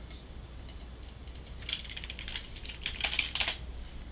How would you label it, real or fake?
real